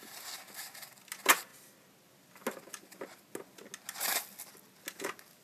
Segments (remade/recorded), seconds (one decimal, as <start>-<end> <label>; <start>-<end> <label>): 0.0-5.4 recorded